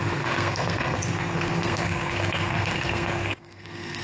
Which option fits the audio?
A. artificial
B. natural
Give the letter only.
A